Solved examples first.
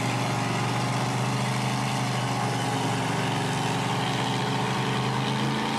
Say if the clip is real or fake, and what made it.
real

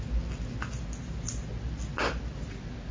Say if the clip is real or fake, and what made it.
real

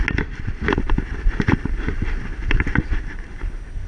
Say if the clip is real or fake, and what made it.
real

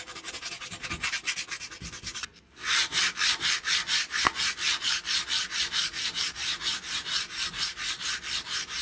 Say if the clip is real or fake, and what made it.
fake, vocoder, BigVGAN v2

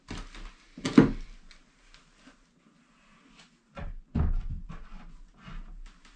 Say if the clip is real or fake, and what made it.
real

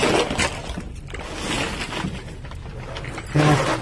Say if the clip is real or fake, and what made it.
real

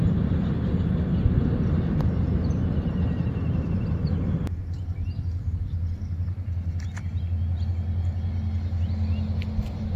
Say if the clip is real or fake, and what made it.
real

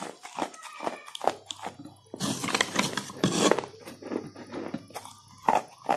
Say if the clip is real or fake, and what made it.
real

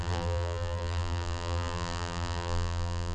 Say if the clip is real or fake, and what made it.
fake, vocoder, BigVGAN v2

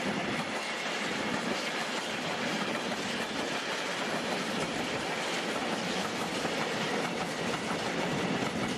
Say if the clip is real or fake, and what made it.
fake, vocoder, BigVGAN v2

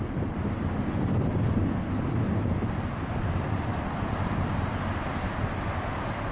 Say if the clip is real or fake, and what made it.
real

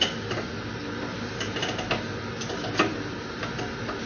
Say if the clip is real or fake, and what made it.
real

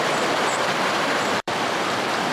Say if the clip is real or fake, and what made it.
fake, vocoder, BigVGAN v2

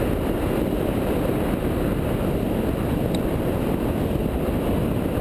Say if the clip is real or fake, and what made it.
real